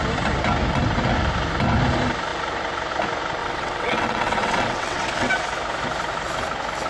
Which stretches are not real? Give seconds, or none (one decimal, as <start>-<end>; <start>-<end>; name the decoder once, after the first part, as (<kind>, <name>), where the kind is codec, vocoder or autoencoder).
3.4-5.3 (vocoder, WaveNeXt)